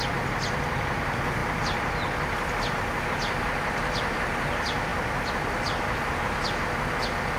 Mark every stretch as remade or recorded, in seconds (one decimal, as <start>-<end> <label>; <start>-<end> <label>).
0.0-7.4 recorded